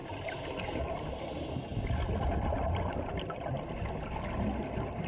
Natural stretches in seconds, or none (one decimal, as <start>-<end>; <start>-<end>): 0.9-5.1